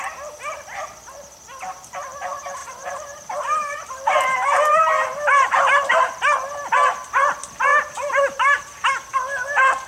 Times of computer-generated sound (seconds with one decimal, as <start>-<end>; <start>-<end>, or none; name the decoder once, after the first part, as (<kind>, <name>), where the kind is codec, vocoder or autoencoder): 2.6-6.2 (vocoder, BigVGAN v2); 7.7-8.9

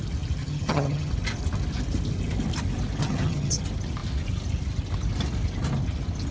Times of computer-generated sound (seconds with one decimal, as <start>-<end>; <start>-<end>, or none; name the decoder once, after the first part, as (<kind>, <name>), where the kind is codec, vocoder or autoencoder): 0.4-1.1 (vocoder, HiFi-GAN); 3.0-3.6

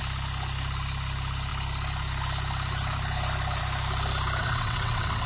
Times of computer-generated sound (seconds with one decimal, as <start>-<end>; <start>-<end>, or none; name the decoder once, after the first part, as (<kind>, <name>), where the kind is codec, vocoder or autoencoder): 4.4-5.3 (vocoder, WaveNeXt)